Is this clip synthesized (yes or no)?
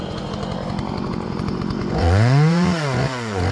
yes